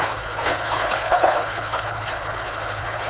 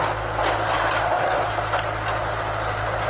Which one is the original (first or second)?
second